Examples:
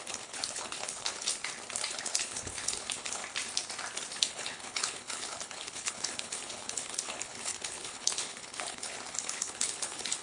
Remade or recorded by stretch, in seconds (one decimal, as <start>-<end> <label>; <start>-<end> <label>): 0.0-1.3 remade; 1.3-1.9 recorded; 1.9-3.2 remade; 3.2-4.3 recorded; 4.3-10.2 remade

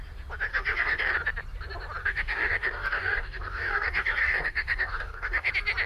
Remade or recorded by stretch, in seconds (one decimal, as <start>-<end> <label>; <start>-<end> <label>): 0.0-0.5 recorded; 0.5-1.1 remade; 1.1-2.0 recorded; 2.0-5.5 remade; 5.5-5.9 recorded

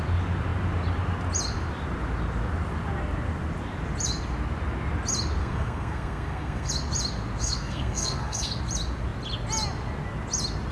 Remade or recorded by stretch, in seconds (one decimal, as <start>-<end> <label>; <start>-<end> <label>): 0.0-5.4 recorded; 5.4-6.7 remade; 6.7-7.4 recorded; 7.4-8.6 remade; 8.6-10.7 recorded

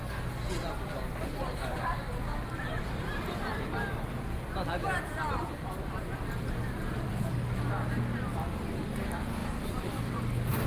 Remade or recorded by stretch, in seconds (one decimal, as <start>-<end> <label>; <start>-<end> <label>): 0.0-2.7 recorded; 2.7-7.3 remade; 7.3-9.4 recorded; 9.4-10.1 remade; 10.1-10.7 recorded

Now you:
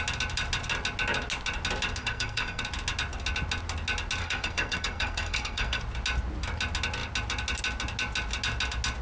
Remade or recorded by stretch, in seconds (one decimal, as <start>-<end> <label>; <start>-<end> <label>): 0.0-2.0 recorded; 2.0-2.6 remade; 2.6-4.2 recorded; 4.2-5.8 remade; 5.8-9.0 recorded

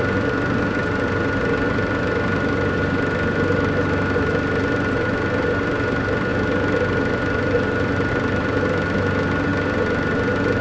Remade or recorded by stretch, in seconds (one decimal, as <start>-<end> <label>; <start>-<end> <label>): 0.0-10.6 recorded

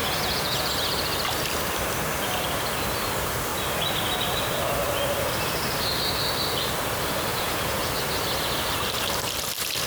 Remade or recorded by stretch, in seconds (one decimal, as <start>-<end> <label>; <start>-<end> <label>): 0.0-0.7 remade; 0.7-7.3 recorded; 7.3-7.9 remade; 7.9-9.9 recorded